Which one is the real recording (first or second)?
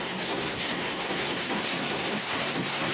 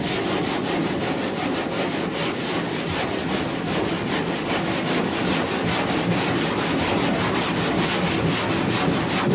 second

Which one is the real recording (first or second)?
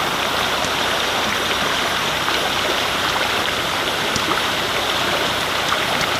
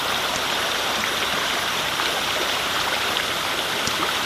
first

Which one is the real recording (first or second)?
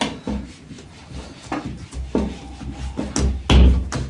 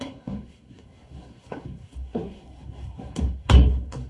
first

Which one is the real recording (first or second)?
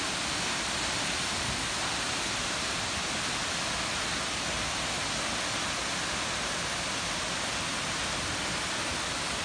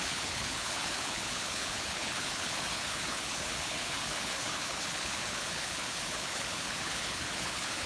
first